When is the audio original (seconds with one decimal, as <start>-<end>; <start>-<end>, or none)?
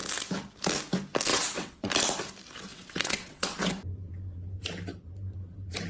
0.0-1.3; 1.9-2.7; 3.6-5.9